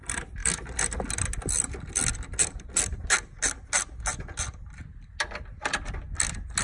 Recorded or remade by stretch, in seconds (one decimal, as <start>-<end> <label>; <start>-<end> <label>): 0.0-6.6 recorded